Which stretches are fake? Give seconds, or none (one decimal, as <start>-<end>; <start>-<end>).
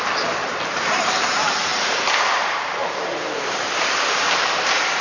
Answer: 0.0-5.0